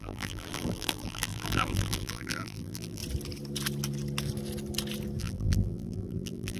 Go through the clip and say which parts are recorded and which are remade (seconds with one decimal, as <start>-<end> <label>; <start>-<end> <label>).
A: 0.0-3.0 remade; 3.0-5.2 recorded; 5.2-6.6 remade